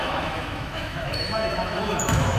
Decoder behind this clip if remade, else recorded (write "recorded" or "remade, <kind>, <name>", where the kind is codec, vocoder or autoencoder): remade, autoencoder, DAC-VAE